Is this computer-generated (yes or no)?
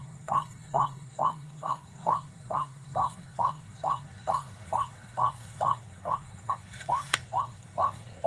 yes